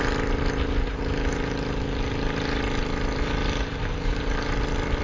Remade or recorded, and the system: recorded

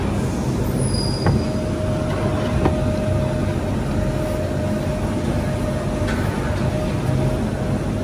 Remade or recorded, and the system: recorded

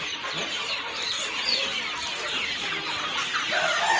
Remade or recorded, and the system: recorded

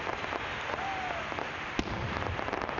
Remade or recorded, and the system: recorded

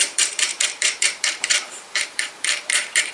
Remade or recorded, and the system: remade, vocoder, BigVGAN v2